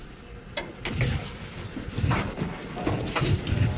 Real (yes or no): yes